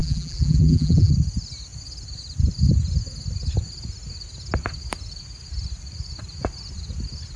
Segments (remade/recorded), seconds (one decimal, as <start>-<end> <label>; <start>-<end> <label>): 0.0-1.1 remade; 1.1-7.4 recorded

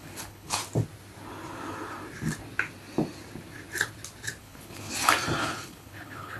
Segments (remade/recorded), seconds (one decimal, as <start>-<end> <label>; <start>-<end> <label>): 0.0-0.6 remade; 0.6-4.4 recorded; 4.4-4.9 remade; 4.9-5.4 recorded; 5.4-6.4 remade